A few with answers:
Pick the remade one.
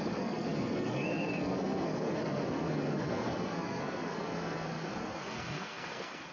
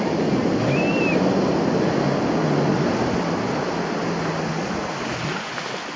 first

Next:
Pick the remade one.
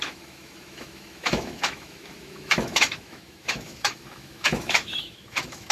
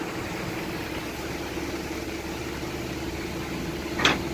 first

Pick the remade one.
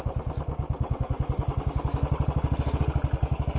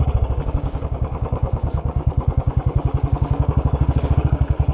second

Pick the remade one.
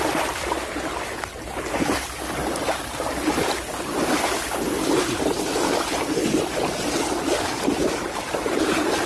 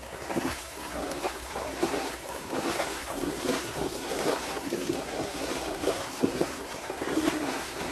second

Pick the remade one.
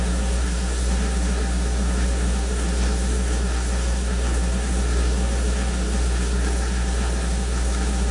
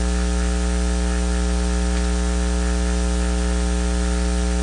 first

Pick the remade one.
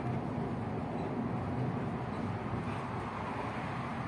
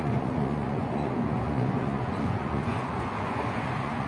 second